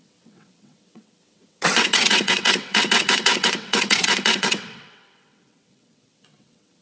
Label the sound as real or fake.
fake